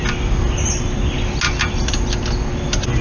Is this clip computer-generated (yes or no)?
no